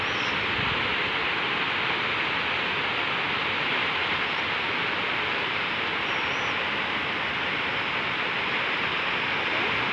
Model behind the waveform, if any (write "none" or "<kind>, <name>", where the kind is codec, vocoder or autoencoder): none